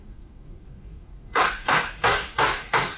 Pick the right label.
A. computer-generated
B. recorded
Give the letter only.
A